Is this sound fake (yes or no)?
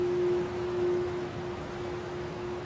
yes